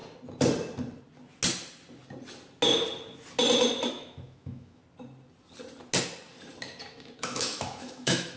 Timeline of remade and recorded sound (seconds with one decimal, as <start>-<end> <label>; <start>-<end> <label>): 0.0-3.9 recorded; 3.9-4.8 remade; 4.8-6.9 recorded; 6.9-8.4 remade